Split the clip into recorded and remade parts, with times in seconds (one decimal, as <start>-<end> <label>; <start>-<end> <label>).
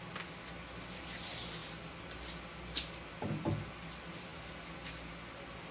0.0-5.7 recorded